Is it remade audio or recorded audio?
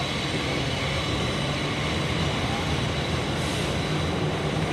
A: recorded